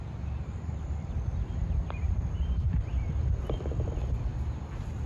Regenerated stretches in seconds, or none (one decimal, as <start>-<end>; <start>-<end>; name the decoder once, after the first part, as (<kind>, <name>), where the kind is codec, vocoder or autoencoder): 0.0-2.9 (vocoder, BigVGAN v2)